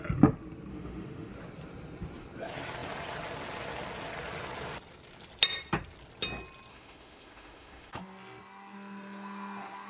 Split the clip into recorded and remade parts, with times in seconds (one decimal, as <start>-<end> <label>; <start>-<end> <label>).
0.0-0.7 recorded; 0.7-1.3 remade; 1.3-6.7 recorded; 6.7-8.0 remade; 8.0-9.9 recorded